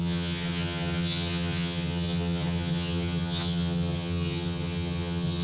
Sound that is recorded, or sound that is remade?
remade